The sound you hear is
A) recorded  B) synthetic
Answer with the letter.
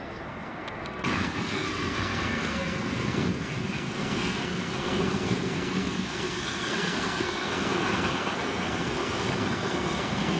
B